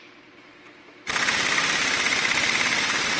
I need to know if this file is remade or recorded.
remade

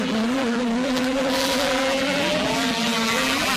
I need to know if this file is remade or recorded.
remade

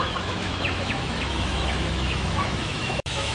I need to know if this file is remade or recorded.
remade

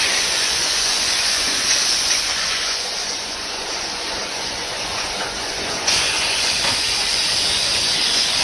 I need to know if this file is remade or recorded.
remade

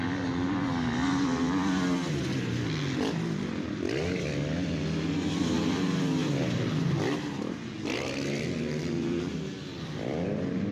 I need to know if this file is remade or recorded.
recorded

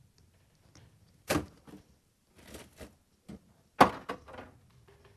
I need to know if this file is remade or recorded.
recorded